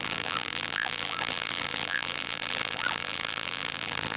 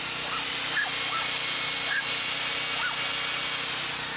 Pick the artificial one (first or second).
first